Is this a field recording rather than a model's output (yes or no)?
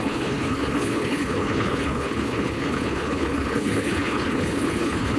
no